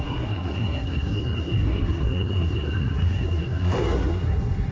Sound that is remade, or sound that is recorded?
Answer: remade